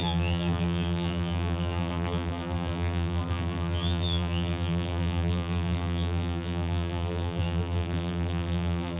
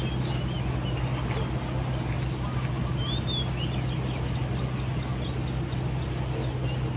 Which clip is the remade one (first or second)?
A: first